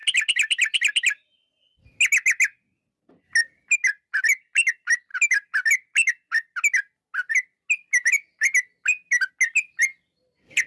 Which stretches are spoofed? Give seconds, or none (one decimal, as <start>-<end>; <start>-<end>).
none